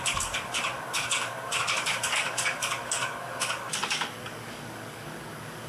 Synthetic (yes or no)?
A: yes